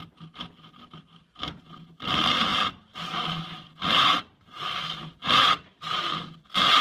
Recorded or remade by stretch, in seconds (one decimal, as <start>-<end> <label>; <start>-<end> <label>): 0.0-6.8 recorded